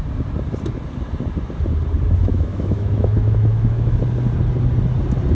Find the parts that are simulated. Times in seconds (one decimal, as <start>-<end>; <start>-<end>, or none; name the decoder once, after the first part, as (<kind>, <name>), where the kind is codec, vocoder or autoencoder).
2.3-4.0 (autoencoder, DAC-VAE)